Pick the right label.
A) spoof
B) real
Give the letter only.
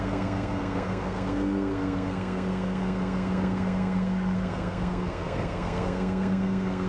A